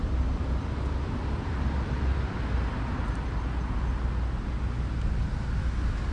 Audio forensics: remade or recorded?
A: recorded